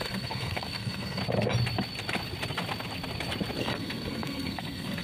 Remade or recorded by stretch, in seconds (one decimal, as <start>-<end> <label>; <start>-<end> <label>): 0.0-1.2 remade; 1.2-3.6 recorded; 3.6-5.0 remade